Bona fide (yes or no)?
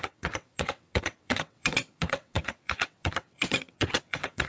no